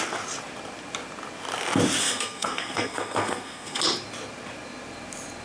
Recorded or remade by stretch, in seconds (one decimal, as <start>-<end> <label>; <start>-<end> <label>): 0.0-2.0 recorded; 2.0-3.8 remade; 3.8-5.4 recorded